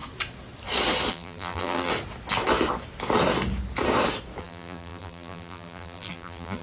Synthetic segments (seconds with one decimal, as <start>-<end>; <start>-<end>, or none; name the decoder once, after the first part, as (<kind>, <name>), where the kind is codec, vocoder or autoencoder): 1.1-1.9 (vocoder, BigVGAN v2); 4.4-6.6